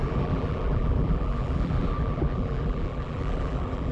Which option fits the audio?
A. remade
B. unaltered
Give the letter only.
A